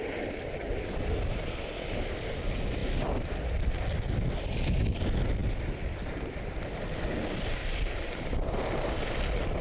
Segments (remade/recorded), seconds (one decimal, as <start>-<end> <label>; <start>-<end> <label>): 0.0-2.8 recorded; 2.8-3.7 remade; 3.7-5.4 recorded; 5.4-7.0 remade; 7.0-9.6 recorded